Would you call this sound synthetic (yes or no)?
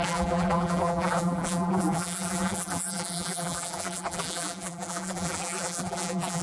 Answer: yes